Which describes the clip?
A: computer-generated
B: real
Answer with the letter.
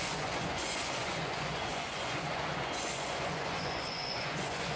A